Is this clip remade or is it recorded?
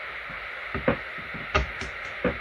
recorded